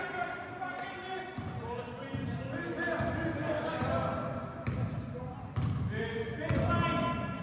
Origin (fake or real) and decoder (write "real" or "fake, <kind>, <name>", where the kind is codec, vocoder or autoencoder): real